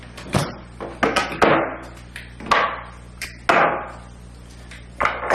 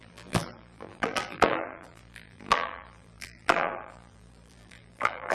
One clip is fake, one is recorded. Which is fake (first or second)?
second